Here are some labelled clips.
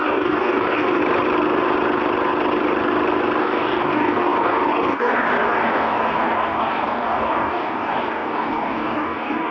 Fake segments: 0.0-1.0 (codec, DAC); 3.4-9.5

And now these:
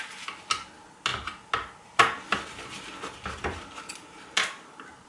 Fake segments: none

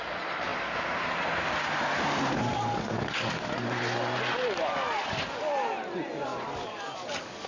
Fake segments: 2.5-3.3 (codec, DAC); 6.3-7.5

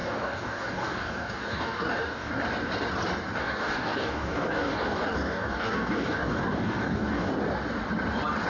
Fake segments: 0.0-2.3 (codec, DAC); 3.4-7.3

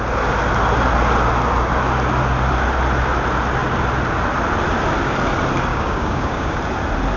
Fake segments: 5.7-6.6 (codec, DAC)

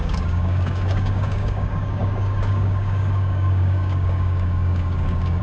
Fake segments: 0.0-5.4 (codec, DAC)

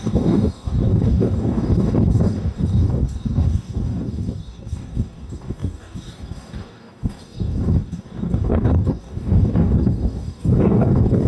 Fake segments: 0.0-11.3 (codec, DAC)

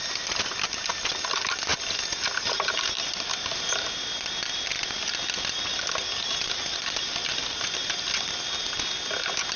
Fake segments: none